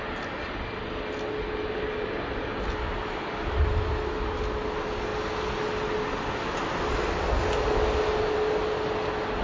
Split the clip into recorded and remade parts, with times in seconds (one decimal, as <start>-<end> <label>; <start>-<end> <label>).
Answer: 0.0-9.4 recorded